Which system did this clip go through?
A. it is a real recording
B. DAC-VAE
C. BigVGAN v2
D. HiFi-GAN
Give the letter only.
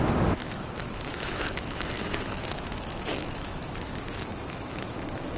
B